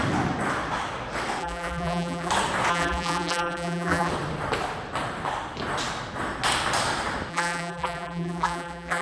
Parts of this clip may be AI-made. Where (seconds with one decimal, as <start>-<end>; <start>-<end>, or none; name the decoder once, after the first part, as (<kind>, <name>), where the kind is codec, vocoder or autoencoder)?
1.4-2.3 (vocoder, BigVGAN v2); 2.7-4.1; 7.3-9.0